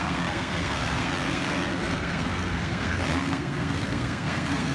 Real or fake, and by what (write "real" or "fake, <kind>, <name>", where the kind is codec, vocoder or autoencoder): fake, codec, SNAC